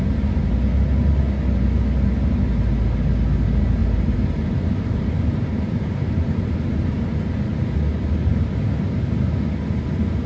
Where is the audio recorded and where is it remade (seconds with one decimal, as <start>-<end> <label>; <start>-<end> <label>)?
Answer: 0.0-3.8 recorded; 3.8-6.5 remade; 6.5-7.9 recorded; 7.9-8.5 remade; 8.5-10.3 recorded